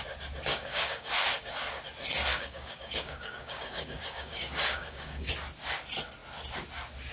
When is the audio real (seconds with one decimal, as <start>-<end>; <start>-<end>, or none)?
0.0-0.5; 1.5-2.3; 5.3-7.1